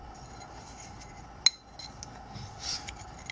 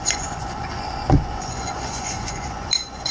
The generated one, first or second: second